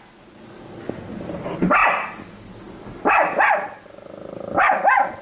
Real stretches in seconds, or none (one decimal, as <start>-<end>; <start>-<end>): 0.0-5.2